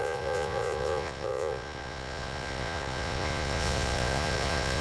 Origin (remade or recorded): remade